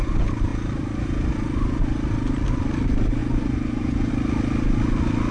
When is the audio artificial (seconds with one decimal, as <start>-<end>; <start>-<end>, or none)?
3.2-4.1

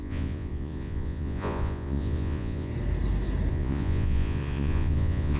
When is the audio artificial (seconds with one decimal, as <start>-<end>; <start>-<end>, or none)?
0.0-2.7; 3.5-5.4